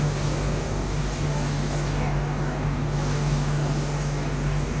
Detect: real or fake fake